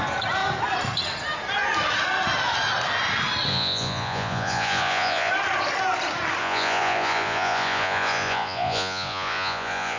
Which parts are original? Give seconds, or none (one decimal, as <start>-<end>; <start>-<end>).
0.0-3.5; 5.3-6.4